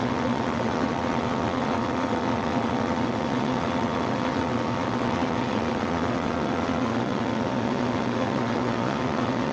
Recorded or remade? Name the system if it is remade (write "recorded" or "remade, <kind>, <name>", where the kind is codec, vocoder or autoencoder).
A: remade, vocoder, WaveNeXt